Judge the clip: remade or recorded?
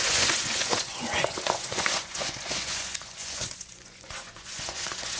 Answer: remade